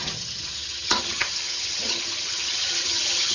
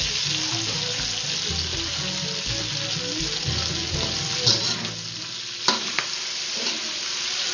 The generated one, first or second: first